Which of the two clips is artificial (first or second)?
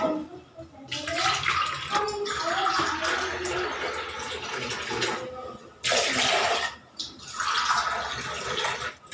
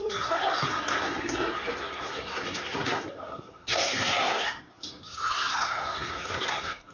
second